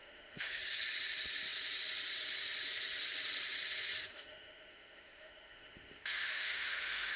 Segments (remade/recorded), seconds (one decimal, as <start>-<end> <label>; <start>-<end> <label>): 0.0-0.6 remade; 0.6-4.1 recorded; 4.1-7.2 remade